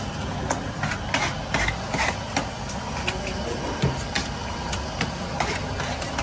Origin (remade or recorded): recorded